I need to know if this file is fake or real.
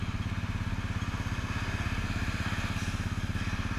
real